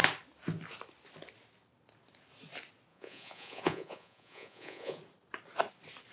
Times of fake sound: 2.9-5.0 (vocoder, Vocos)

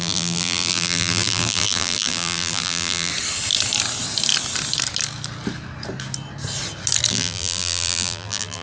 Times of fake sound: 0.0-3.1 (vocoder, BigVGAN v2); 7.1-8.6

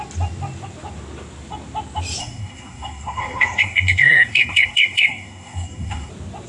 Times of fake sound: 2.2-6.1 (codec, SNAC)

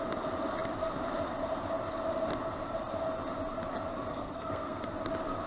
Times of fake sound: 4.1-4.8 (codec, SNAC)

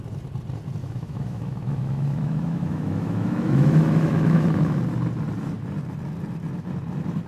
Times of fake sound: 0.8-4.8 (autoencoder, DAC-VAE)